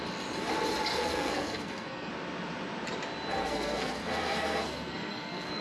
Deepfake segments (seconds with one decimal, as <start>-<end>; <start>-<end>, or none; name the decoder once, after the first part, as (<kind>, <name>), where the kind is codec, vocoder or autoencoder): 0.9-2.1 (codec, SNAC); 3.4-5.6